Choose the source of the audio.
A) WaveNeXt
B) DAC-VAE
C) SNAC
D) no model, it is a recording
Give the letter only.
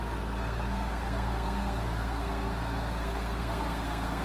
C